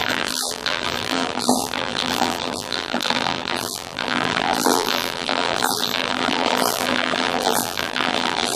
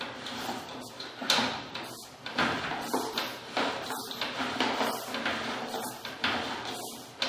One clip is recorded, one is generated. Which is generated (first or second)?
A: first